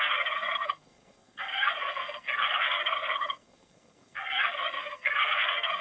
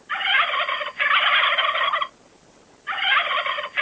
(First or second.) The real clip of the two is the second